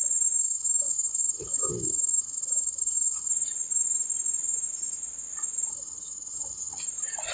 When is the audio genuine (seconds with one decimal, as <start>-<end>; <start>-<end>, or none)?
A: 0.0-0.4; 3.3-5.7; 6.8-7.3